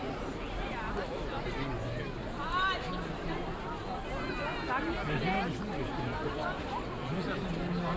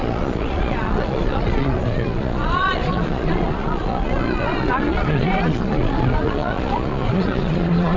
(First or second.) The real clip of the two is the first